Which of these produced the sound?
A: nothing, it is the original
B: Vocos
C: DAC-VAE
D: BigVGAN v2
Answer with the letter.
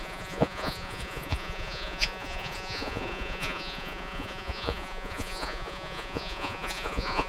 B